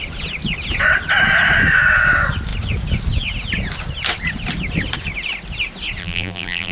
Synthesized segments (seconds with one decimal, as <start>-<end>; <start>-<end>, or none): 6.0-6.7